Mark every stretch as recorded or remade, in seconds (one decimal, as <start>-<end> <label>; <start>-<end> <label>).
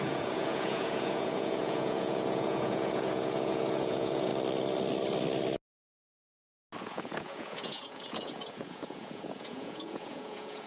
0.0-4.3 remade; 4.3-6.8 recorded; 6.8-10.7 remade